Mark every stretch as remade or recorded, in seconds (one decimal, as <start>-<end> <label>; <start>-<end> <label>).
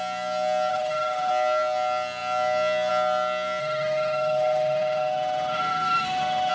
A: 0.0-0.7 recorded; 0.7-1.3 remade; 1.3-3.6 recorded; 3.6-6.5 remade